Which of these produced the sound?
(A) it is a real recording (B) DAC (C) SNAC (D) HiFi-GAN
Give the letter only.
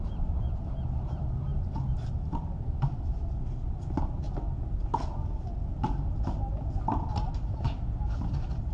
A